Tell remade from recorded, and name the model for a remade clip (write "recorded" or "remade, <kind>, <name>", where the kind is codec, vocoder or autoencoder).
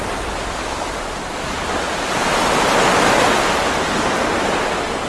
recorded